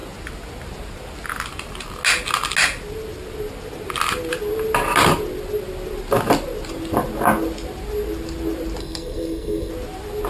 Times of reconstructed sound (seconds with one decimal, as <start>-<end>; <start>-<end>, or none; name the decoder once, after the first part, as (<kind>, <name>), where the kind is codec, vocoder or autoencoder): 8.8-9.7 (codec, SNAC)